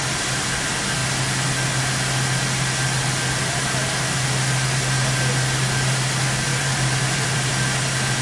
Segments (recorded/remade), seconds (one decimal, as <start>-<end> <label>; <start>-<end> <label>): 0.0-6.5 recorded; 6.5-7.5 remade; 7.5-8.2 recorded